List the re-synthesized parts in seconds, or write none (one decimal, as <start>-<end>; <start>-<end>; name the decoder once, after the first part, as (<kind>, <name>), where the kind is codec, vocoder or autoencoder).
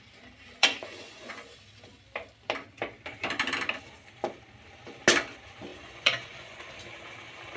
0.6-1.3 (vocoder, Vocos); 5.7-6.7